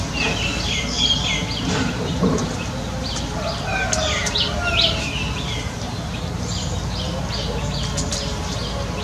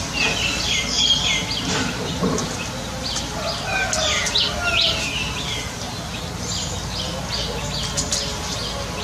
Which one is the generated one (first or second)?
first